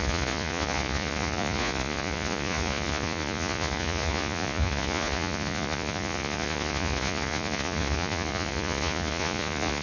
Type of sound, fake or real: fake